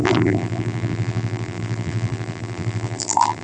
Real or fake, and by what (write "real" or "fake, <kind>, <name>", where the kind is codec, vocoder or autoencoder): fake, vocoder, BigVGAN v2